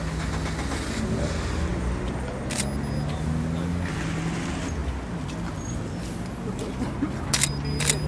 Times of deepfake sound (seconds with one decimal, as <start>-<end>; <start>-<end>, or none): none